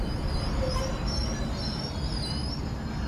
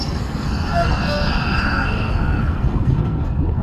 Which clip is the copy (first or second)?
second